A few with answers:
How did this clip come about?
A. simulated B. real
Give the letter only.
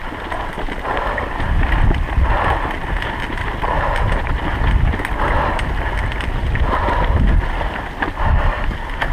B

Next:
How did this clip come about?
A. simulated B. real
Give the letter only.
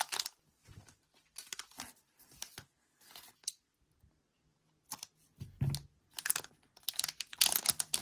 B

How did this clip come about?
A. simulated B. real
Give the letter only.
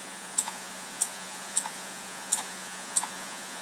A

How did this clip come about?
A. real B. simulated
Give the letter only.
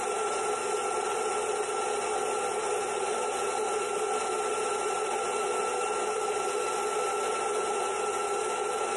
A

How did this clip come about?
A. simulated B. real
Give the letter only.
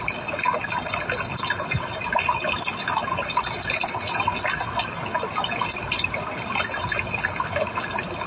B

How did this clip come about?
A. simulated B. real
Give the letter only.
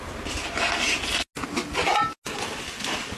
B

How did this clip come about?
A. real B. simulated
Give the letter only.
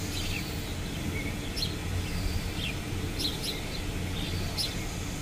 A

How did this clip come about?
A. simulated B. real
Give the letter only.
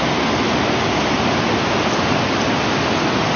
B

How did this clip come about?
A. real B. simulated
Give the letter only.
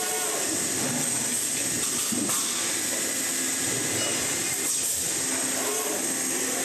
A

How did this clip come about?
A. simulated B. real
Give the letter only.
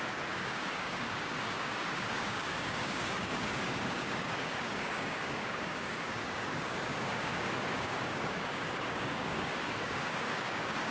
A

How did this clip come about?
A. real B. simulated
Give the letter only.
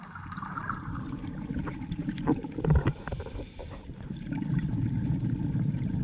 B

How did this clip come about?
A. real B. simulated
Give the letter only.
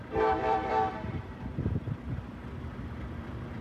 B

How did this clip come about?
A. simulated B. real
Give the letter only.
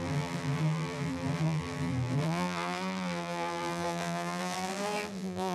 A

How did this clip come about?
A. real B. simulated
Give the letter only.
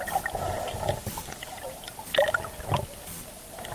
A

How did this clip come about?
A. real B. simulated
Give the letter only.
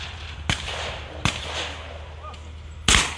A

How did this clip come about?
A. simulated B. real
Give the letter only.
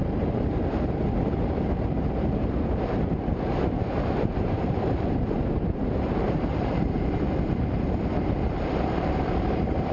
A